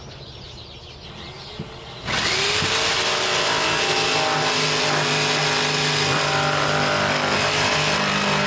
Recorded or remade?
recorded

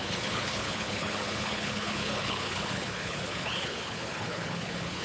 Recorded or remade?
remade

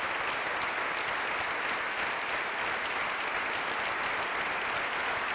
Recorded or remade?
recorded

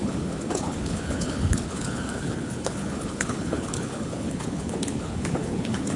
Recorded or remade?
remade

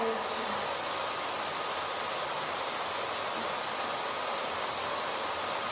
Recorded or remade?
recorded